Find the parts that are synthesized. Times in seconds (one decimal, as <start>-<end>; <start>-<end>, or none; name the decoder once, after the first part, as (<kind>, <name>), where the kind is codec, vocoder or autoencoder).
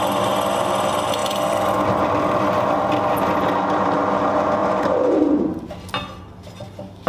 4.6-5.7 (vocoder, BigVGAN v2)